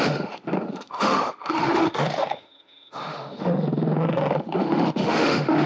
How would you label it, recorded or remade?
remade